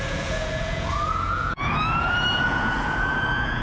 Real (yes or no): no